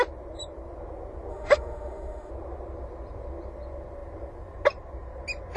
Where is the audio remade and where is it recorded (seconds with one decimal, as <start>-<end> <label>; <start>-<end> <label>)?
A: 0.0-1.3 recorded; 1.3-2.3 remade; 2.3-5.6 recorded